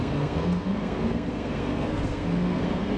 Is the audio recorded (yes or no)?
no